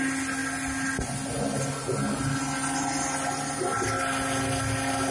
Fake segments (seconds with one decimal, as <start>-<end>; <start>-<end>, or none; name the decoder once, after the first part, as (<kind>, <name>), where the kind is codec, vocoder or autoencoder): none